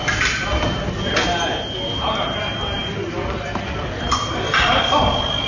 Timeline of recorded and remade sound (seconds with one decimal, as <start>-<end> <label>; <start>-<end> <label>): 0.0-0.9 remade; 0.9-5.5 recorded